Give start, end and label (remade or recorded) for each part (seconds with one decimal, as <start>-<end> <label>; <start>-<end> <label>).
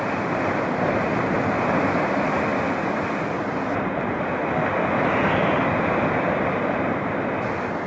0.0-7.9 recorded